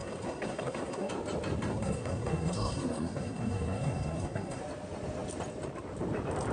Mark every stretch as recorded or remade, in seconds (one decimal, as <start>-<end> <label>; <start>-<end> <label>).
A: 0.0-1.1 remade; 1.1-1.7 recorded; 1.7-4.6 remade; 4.6-6.5 recorded